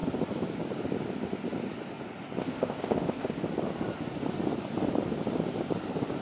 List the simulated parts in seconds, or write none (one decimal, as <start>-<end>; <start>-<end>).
2.4-3.4